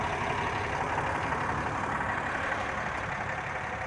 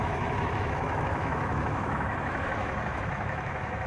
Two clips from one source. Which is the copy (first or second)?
second